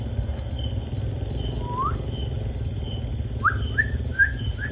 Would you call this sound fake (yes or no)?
no